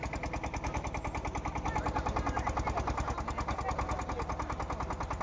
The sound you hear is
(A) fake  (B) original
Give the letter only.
B